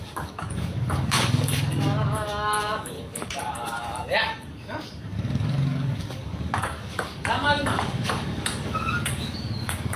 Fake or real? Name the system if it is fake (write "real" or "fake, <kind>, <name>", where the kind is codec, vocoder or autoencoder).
fake, codec, DAC